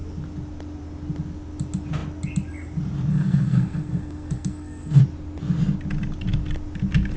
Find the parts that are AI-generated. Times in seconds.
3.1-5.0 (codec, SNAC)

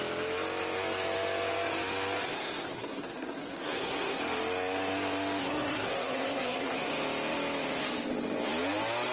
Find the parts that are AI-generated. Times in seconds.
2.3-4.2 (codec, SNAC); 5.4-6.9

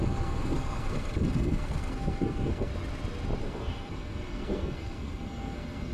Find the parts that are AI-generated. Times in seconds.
0.0-2.7 (codec, SNAC); 3.4-5.9

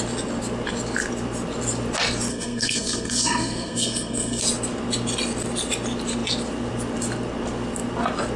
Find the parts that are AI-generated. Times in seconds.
2.3-4.4 (codec, SNAC)

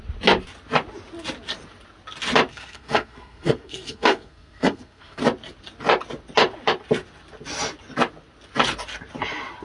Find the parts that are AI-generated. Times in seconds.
2.5-5.2 (codec, SNAC)

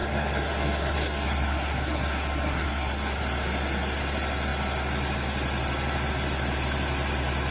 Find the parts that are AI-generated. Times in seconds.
0.0-3.2 (codec, SNAC)

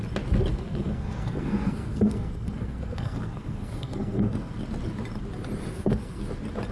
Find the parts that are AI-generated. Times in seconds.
0.5-4.5 (codec, SNAC); 5.7-6.2